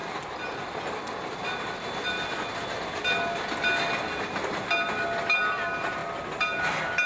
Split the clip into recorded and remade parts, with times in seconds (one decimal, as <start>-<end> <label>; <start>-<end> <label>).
0.0-7.1 recorded